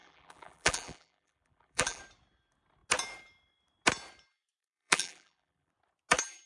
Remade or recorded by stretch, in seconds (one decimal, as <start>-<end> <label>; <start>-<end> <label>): 0.0-2.0 remade; 2.0-4.6 recorded; 4.6-5.7 remade; 5.7-6.5 recorded